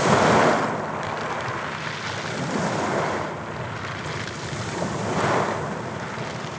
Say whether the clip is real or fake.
real